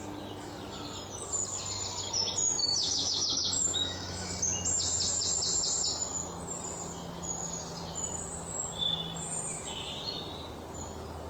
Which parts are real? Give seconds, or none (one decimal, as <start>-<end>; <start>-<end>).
0.0-2.6; 4.3-11.3

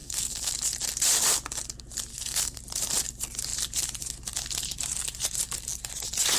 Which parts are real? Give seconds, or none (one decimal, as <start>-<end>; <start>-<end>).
0.5-2.1; 2.6-6.4